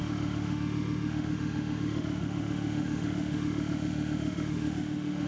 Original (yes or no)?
no